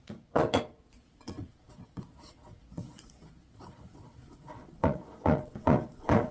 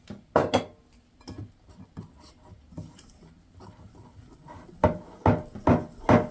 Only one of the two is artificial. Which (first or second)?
first